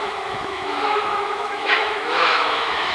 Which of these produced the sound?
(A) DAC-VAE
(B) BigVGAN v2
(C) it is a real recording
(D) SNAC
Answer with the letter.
A